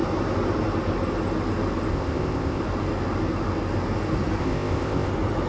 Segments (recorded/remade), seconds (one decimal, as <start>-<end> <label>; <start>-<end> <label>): 0.0-1.9 recorded; 1.9-2.6 remade; 2.6-4.4 recorded; 4.4-5.1 remade; 5.1-5.5 recorded